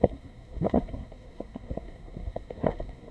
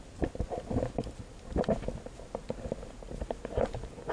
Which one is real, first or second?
second